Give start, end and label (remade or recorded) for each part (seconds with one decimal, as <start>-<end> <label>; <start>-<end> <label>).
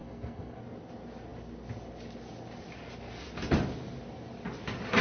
0.0-0.6 remade; 0.6-5.0 recorded